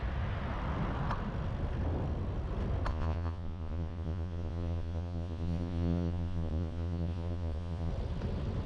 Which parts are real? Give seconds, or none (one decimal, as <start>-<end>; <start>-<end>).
0.0-2.9; 7.9-8.7